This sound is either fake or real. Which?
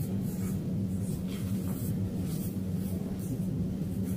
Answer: real